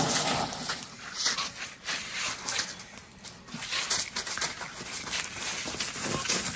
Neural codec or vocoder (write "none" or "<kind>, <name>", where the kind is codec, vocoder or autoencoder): none